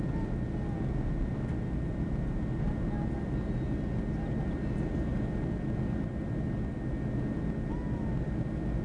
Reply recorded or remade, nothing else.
recorded